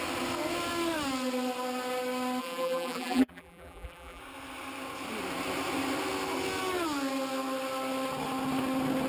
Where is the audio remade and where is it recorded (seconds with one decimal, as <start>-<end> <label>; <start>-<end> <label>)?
0.0-2.4 recorded; 2.4-4.2 remade; 4.2-9.1 recorded